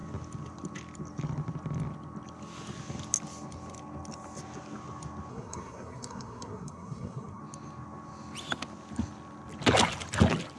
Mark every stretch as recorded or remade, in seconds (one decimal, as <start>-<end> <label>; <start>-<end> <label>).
0.0-5.3 recorded; 5.3-7.4 remade; 7.4-10.6 recorded